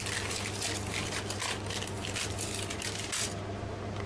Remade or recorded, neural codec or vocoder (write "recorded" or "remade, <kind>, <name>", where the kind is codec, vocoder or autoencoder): recorded